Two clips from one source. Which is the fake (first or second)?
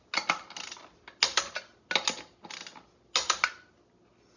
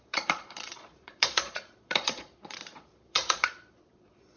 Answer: second